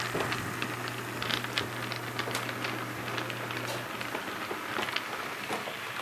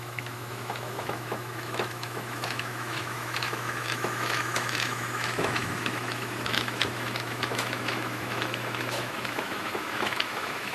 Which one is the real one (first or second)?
first